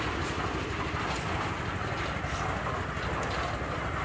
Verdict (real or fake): real